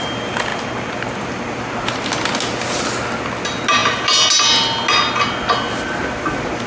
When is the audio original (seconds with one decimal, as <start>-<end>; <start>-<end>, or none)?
0.0-6.7